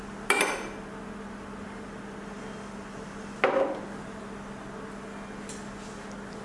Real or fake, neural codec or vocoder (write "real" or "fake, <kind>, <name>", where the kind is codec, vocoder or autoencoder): real